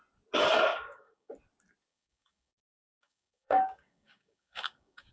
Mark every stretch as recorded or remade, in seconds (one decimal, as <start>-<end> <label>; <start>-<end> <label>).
0.0-0.7 recorded; 0.7-1.3 remade; 1.3-1.9 recorded; 1.9-5.1 remade